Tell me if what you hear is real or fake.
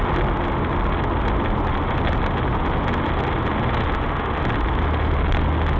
real